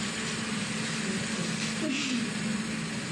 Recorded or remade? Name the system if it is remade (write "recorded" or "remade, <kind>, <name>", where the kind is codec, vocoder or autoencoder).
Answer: recorded